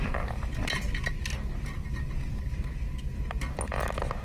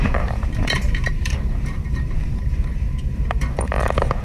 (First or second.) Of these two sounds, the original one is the first